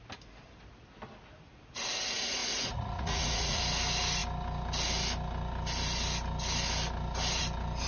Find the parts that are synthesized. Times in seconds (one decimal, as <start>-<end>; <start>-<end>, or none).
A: 2.4-3.6